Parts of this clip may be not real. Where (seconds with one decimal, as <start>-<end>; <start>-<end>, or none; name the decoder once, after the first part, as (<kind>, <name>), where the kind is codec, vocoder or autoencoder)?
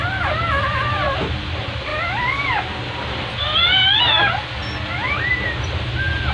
none